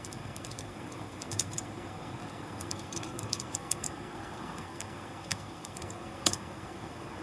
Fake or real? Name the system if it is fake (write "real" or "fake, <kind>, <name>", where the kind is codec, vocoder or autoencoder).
fake, codec, SNAC